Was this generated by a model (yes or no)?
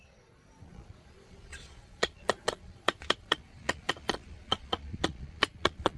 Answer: yes